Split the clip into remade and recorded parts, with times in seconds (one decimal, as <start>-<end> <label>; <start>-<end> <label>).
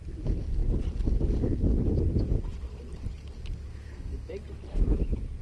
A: 0.0-3.7 recorded; 3.7-4.3 remade; 4.3-5.4 recorded